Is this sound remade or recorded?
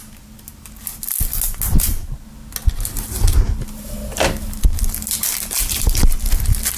recorded